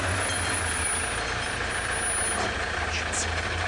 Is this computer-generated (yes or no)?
no